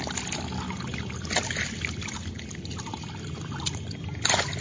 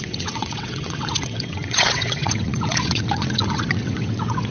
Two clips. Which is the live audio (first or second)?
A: first